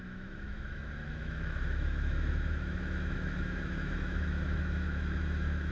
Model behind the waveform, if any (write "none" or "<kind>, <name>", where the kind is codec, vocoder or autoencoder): autoencoder, DAC-VAE